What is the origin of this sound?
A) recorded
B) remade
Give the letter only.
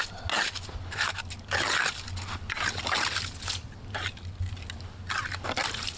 A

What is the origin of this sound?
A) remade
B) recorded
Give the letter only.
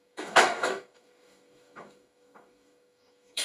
A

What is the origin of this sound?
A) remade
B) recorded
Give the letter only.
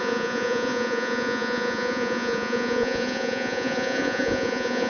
A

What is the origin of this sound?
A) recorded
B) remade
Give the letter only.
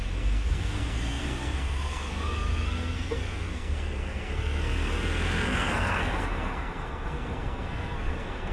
B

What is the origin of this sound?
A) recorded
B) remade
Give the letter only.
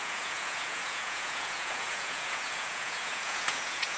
B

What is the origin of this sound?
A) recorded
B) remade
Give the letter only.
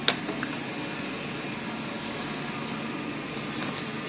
A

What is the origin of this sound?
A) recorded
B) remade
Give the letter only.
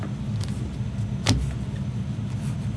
A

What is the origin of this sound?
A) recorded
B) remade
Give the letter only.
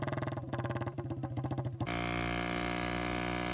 A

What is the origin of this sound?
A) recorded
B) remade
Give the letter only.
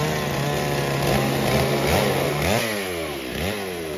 A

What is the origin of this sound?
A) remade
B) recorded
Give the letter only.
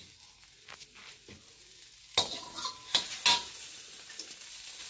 B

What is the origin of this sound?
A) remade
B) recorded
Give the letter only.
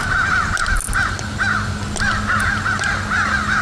B